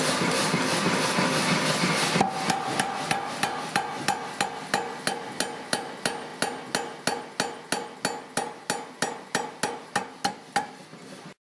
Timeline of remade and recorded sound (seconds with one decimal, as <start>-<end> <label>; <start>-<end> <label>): 0.0-11.5 recorded